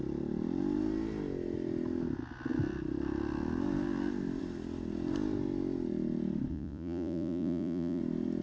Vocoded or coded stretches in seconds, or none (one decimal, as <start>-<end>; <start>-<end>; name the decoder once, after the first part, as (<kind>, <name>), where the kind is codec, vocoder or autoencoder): 6.5-8.0 (vocoder, Vocos)